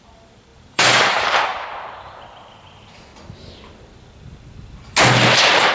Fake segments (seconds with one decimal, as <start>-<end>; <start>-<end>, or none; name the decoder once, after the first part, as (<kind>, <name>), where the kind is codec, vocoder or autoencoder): 0.0-3.1 (vocoder, BigVGAN v2)